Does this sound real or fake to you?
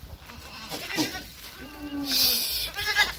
real